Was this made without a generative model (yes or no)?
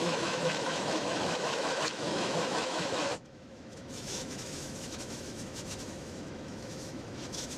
no